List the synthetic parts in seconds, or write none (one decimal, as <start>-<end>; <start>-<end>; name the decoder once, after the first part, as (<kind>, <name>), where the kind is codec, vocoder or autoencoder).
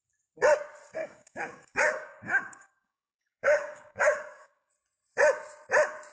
1.0-4.7 (codec, DAC)